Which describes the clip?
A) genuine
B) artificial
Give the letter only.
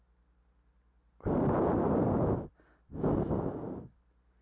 A